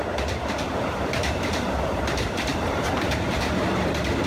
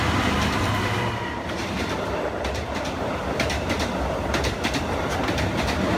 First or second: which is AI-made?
first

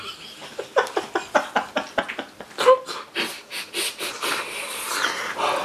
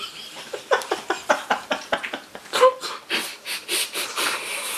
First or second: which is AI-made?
second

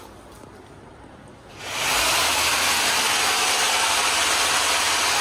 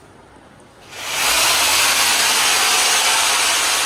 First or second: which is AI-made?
first